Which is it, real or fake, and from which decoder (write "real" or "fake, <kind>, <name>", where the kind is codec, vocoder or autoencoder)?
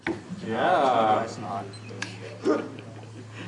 real